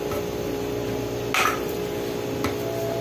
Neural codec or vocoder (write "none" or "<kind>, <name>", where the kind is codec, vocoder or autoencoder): none